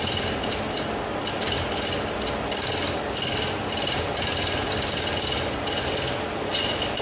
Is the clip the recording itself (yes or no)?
yes